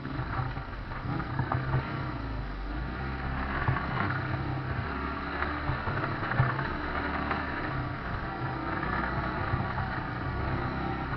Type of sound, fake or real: fake